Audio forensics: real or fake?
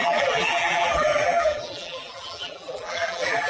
fake